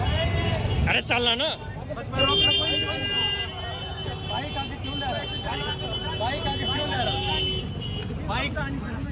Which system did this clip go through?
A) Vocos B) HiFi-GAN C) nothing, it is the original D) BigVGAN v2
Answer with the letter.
C